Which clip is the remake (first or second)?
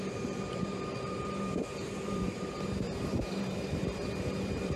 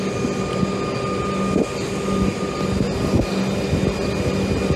first